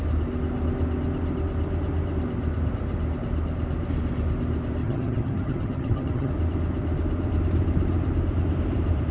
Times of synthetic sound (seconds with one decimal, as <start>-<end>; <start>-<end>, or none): 4.8-6.3